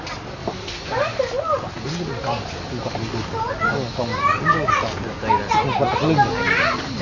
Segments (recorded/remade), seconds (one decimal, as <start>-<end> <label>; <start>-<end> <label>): 0.0-7.0 recorded